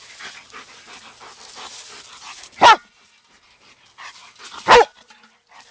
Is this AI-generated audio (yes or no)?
no